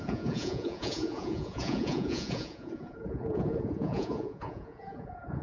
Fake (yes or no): yes